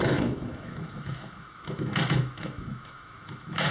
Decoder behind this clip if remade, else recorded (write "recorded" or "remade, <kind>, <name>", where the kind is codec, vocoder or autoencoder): remade, autoencoder, DAC-VAE